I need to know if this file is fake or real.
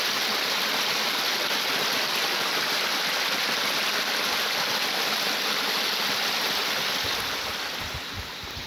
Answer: real